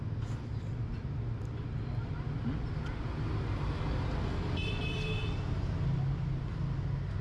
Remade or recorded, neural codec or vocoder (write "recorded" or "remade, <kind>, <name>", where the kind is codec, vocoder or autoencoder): recorded